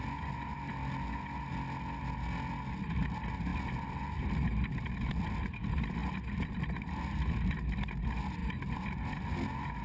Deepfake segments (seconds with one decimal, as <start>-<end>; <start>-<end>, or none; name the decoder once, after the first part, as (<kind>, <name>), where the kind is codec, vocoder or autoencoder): none